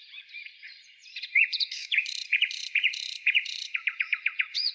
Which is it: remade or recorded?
remade